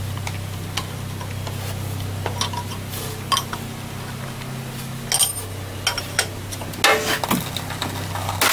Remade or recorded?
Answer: recorded